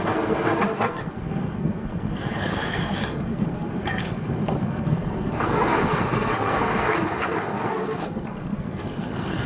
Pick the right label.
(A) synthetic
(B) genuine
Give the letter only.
A